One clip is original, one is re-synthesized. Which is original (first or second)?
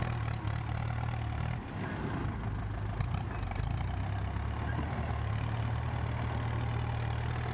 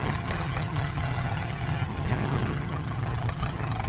first